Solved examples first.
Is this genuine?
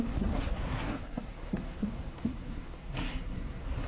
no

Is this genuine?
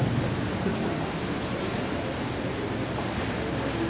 yes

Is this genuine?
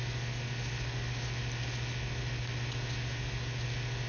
yes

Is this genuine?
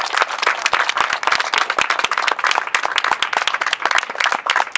yes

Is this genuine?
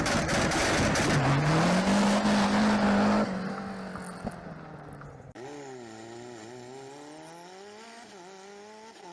yes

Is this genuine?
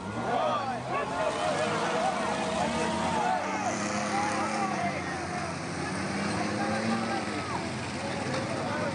yes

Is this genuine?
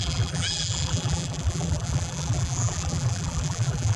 no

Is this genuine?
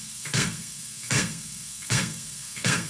no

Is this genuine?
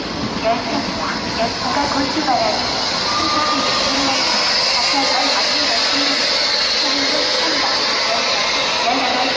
yes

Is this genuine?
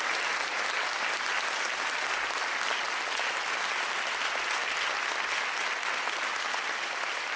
yes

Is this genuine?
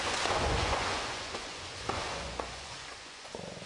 no